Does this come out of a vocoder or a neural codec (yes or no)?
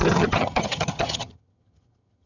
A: yes